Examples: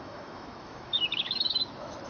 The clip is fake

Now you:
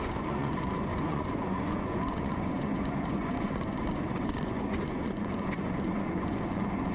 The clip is fake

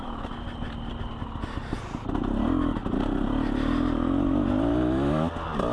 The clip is real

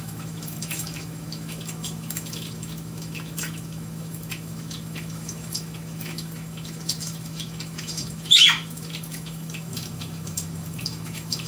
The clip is fake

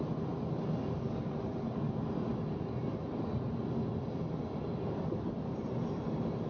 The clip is real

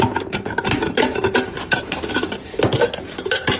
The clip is real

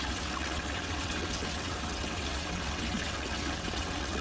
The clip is fake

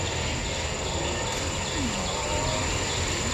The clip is real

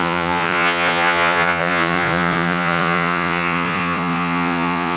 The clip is fake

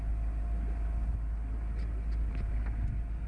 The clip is real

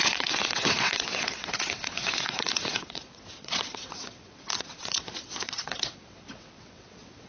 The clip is fake